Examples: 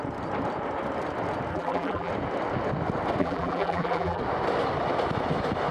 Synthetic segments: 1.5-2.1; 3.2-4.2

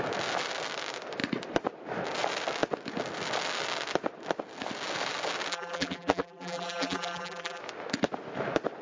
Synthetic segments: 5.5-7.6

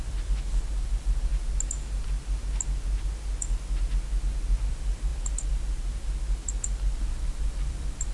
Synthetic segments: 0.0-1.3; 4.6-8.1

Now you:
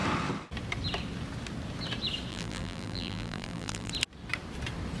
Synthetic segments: 2.3-3.9